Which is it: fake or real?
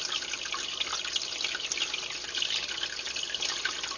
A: real